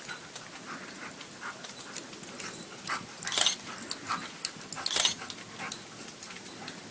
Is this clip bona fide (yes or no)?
yes